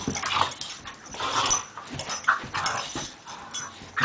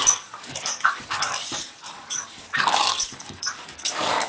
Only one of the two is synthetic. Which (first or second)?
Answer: second